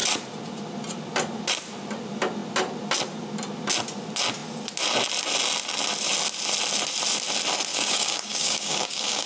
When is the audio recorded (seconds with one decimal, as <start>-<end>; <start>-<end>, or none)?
0.0-7.7